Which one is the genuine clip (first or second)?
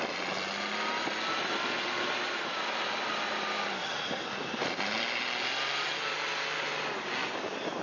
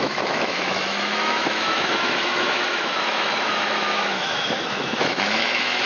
first